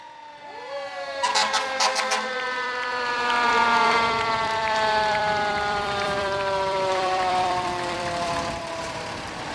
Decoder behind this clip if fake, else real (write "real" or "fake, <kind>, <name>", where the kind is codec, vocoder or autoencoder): fake, vocoder, BigVGAN v2